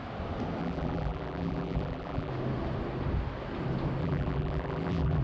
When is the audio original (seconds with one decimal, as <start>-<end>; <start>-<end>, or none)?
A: 0.0-0.6; 2.3-4.0